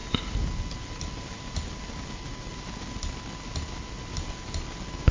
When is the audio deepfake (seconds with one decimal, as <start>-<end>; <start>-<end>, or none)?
none